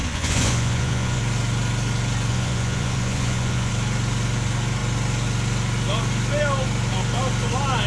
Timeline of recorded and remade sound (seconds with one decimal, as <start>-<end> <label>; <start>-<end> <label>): 0.0-1.2 remade; 1.2-2.3 recorded; 2.3-3.7 remade; 3.7-7.9 recorded